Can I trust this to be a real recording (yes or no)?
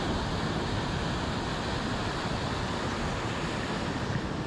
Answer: yes